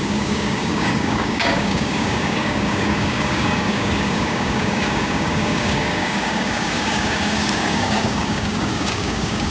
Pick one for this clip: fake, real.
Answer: fake